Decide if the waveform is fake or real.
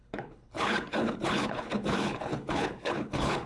fake